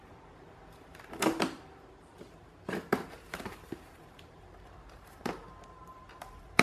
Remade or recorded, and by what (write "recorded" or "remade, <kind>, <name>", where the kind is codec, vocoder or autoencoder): remade, vocoder, BigVGAN v2